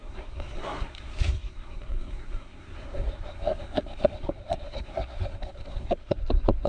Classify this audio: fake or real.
fake